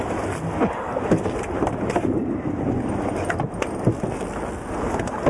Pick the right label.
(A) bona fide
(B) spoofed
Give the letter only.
A